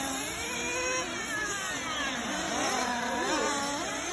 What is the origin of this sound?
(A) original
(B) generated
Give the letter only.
A